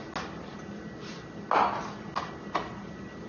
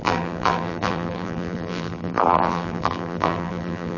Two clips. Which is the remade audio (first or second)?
second